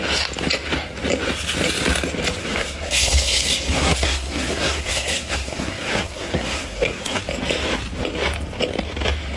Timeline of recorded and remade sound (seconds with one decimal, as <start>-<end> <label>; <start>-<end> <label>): 0.0-2.4 recorded; 2.4-7.2 remade; 7.2-9.4 recorded